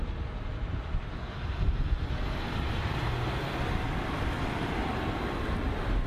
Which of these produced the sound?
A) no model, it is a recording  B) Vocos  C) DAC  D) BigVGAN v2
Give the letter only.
A